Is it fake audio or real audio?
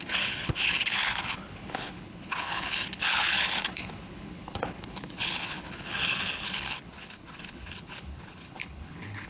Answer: fake